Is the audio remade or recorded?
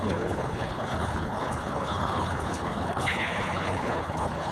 remade